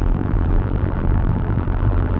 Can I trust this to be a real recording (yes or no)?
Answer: no